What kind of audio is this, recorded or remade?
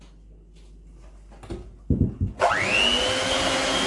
recorded